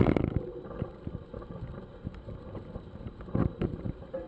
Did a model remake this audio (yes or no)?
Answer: yes